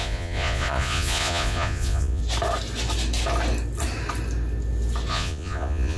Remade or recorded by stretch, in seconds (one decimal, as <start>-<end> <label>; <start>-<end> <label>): 0.0-2.2 remade; 2.2-5.1 recorded; 5.1-6.0 remade

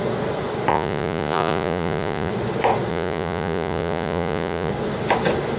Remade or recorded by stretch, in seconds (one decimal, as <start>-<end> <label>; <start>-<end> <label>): 0.0-0.7 recorded; 0.7-2.3 remade; 2.3-2.9 recorded; 2.9-4.7 remade; 4.7-5.6 recorded